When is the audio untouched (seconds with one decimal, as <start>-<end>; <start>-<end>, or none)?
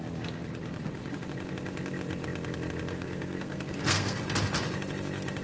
0.0-2.9; 4.2-5.4